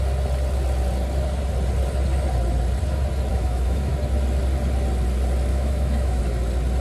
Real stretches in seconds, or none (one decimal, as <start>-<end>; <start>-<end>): 0.0-3.3; 3.9-5.5; 6.2-6.8